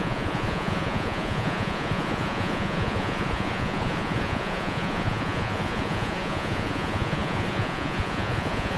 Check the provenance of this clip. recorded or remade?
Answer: remade